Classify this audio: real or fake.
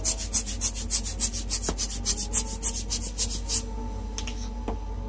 real